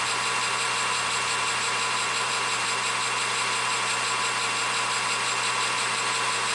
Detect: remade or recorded recorded